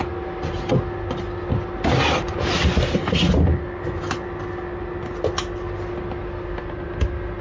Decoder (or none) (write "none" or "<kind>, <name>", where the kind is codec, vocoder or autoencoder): none